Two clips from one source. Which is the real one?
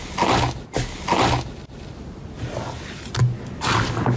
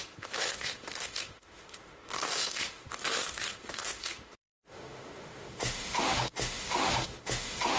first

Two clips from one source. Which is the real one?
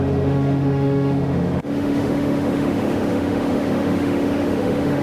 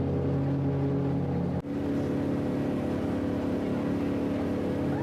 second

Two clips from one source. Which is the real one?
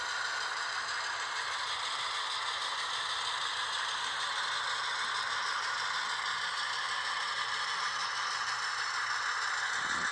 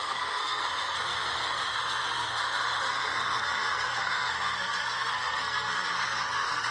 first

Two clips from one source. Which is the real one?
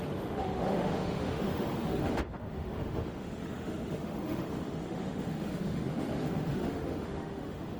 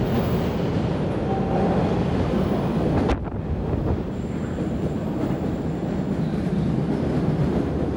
second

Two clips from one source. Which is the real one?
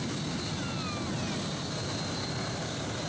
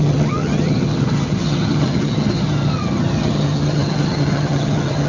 first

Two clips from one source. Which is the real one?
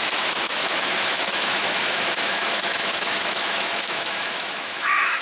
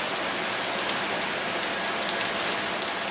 second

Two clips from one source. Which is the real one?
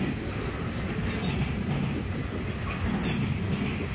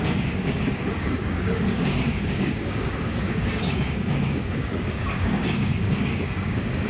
first